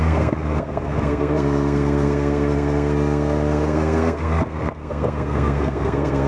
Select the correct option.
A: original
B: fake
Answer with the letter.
B